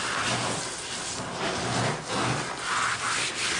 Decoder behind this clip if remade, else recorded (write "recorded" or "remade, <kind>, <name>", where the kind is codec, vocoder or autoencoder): recorded